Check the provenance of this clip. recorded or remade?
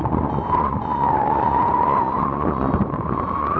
remade